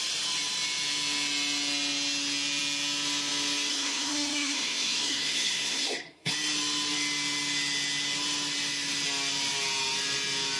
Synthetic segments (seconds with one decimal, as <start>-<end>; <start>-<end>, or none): 3.7-6.3

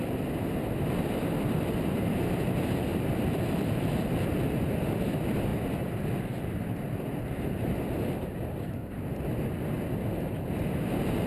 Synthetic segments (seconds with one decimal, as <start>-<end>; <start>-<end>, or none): 2.9-4.0

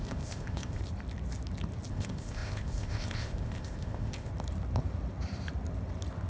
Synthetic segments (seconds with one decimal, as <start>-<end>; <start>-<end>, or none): 0.0-0.8; 1.9-4.3